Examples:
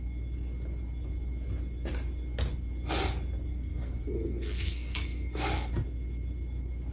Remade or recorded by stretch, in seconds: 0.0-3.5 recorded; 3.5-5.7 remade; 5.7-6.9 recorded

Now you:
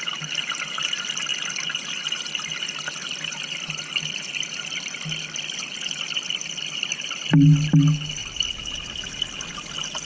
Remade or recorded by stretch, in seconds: 0.0-10.0 recorded

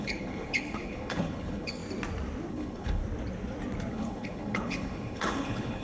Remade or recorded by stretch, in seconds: 0.0-1.8 remade; 1.8-2.5 recorded; 2.5-3.0 remade; 3.0-3.9 recorded; 3.9-5.8 remade

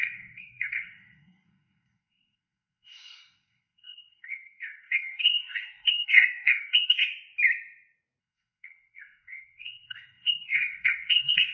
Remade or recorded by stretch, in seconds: 0.0-7.1 remade; 7.1-8.2 recorded; 8.2-11.5 remade

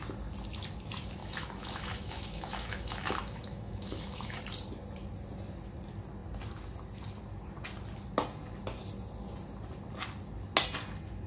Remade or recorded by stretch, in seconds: 0.0-1.2 recorded; 1.2-4.4 remade; 4.4-11.3 recorded

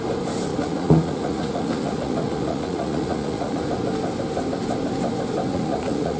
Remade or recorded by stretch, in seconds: 0.0-0.5 recorded; 0.5-3.6 remade; 3.6-5.5 recorded; 5.5-6.2 remade